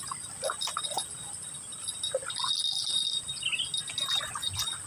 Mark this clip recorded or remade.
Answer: recorded